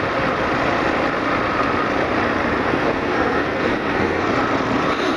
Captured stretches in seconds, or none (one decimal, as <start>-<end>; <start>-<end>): 0.0-2.7; 4.3-5.2